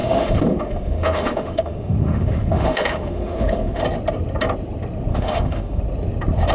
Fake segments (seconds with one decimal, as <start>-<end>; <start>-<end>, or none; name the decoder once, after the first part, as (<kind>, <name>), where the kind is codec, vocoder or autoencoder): 0.0-3.8 (autoencoder, DAC-VAE); 5.1-5.8